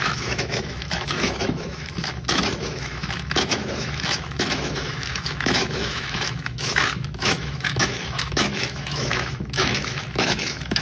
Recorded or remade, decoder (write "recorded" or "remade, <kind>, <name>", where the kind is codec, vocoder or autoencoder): remade, autoencoder, DAC-VAE